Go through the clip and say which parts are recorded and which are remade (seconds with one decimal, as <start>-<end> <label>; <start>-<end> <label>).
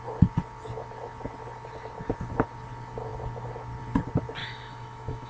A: 0.0-4.4 recorded; 4.4-5.3 remade